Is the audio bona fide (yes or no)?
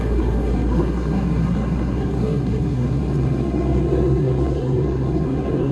no